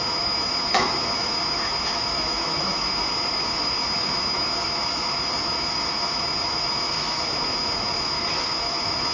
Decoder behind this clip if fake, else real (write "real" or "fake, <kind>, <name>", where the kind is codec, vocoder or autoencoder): fake, autoencoder, DAC-VAE